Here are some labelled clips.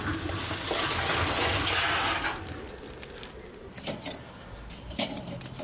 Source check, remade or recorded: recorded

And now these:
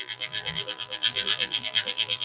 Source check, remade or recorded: remade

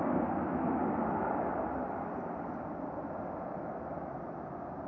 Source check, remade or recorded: recorded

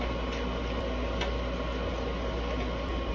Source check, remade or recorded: recorded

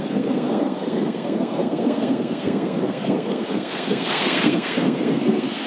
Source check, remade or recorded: remade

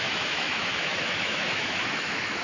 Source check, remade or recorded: remade